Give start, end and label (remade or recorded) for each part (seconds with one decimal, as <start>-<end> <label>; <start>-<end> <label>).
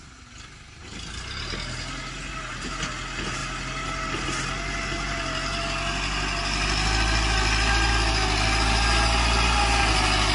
0.0-10.3 recorded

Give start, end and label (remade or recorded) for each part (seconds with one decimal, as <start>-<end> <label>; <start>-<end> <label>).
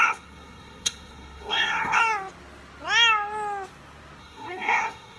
0.0-2.0 remade; 2.0-4.2 recorded; 4.2-5.2 remade